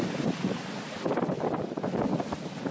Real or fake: real